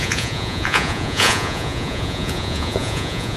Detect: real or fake fake